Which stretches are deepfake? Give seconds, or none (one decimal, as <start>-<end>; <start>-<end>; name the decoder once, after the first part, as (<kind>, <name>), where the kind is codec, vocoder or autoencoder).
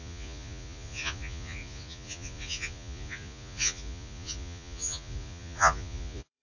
0.0-6.4 (vocoder, Vocos)